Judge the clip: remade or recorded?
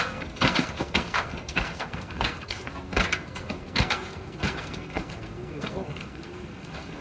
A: remade